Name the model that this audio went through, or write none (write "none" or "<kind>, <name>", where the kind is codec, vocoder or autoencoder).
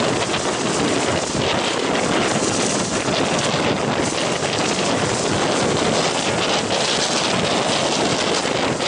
none